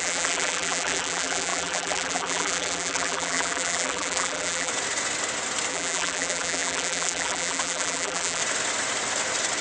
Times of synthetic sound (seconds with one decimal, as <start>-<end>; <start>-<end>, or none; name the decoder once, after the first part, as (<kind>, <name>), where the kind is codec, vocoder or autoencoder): 0.0-4.7 (vocoder, BigVGAN v2); 5.7-8.4